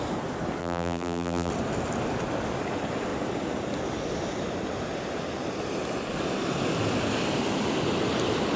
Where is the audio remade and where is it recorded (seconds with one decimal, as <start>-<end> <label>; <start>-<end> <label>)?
0.0-0.6 recorded; 0.6-1.5 remade; 1.5-8.6 recorded